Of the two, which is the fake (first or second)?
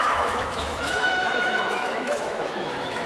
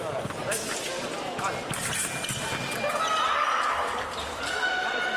first